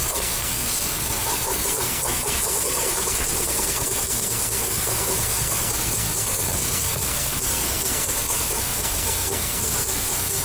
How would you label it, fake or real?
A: fake